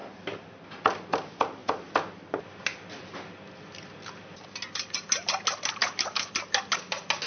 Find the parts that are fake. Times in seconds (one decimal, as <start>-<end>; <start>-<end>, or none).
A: 5.8-6.3

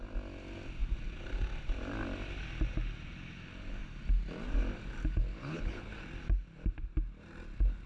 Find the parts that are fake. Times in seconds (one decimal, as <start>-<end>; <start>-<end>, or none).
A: 5.3-5.9

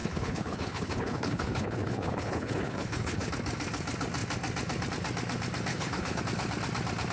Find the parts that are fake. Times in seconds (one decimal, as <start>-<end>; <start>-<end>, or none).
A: 0.0-3.3; 5.7-6.2

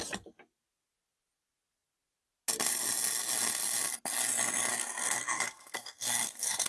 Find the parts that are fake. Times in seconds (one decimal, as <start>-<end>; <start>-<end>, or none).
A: 4.7-6.7

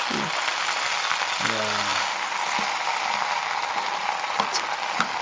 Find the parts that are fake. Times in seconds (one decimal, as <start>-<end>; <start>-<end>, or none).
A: none

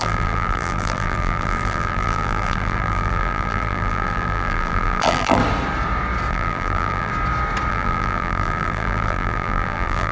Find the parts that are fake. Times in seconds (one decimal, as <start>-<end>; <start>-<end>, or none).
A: 0.0-5.4; 6.3-7.1; 7.7-10.1